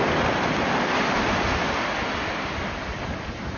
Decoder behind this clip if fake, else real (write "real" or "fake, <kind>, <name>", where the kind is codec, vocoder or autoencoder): real